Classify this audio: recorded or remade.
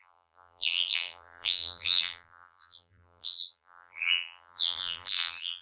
remade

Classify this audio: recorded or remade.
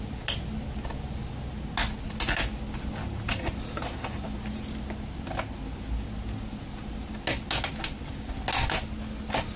recorded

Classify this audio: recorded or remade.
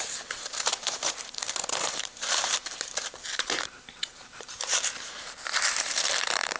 remade